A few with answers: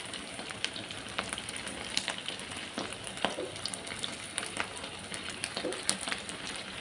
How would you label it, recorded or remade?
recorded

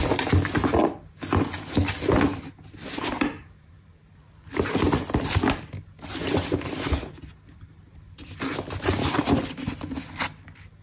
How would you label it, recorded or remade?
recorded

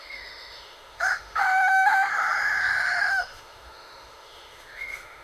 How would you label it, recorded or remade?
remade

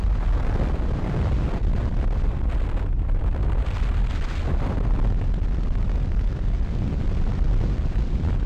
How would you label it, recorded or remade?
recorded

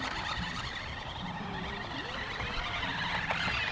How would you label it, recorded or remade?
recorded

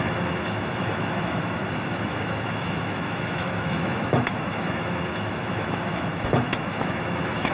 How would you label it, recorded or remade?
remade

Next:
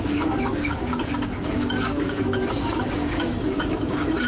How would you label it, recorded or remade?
remade